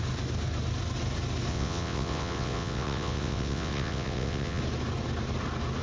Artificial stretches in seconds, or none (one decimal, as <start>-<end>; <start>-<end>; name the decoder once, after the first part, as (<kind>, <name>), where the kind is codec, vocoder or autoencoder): 1.5-4.6 (vocoder, WaveNeXt)